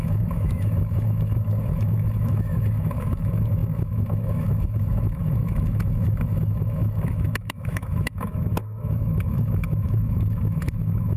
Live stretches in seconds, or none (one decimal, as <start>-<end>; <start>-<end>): none